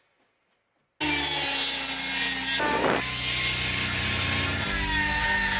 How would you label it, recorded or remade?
recorded